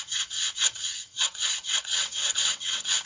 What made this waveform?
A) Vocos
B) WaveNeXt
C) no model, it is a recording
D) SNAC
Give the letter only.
B